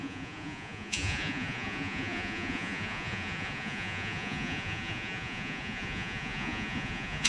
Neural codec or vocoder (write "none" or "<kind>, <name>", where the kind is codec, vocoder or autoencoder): vocoder, Vocos